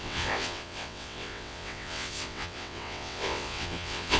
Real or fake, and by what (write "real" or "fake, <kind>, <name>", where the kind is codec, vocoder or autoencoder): fake, vocoder, WaveNeXt